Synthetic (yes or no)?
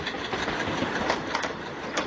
no